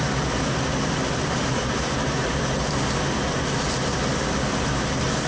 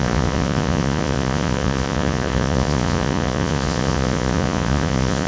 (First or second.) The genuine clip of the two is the first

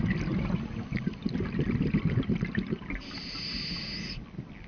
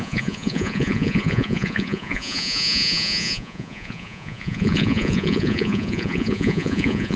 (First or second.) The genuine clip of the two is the first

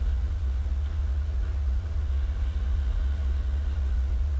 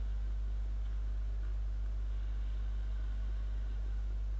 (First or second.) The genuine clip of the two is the second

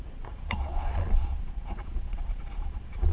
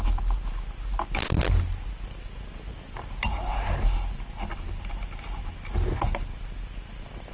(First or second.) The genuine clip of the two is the second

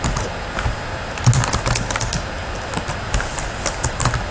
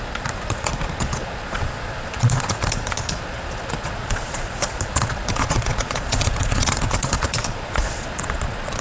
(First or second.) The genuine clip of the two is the first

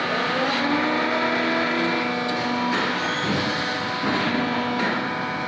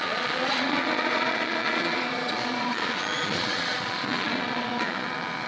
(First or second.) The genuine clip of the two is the first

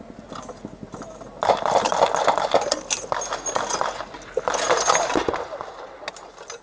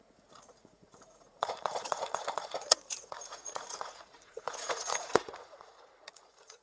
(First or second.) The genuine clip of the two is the first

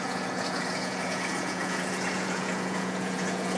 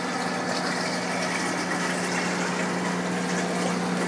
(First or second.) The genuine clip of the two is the second